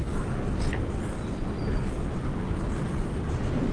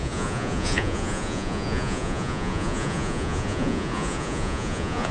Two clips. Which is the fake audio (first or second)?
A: second